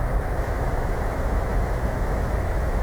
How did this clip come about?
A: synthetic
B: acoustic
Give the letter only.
A